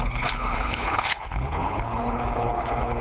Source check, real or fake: fake